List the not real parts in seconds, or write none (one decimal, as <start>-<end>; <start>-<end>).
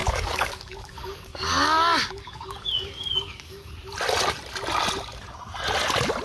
0.0-3.7